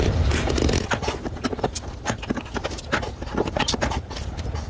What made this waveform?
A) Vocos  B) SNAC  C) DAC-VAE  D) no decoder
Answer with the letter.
D